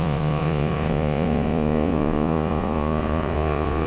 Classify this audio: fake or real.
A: fake